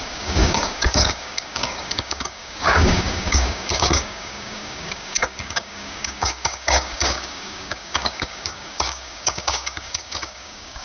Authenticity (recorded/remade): remade